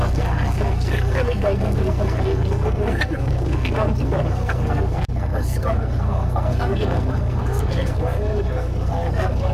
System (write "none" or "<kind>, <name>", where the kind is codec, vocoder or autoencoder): codec, SNAC